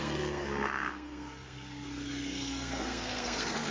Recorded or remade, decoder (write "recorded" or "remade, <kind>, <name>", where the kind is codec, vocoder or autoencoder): remade, codec, SNAC